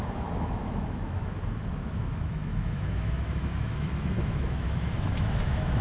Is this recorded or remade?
remade